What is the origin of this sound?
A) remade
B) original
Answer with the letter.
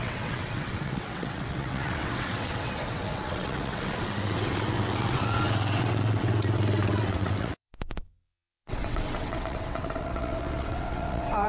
A